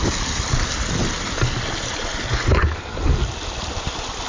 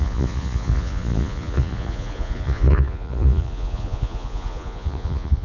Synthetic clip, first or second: second